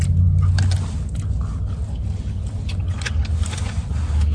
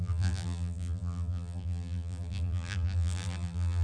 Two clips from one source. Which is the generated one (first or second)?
second